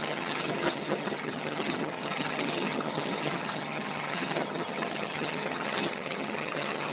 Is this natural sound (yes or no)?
no